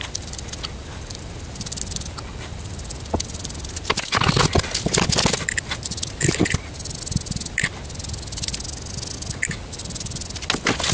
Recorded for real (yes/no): yes